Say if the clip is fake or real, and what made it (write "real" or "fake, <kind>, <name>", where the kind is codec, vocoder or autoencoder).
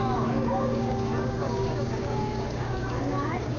fake, codec, DAC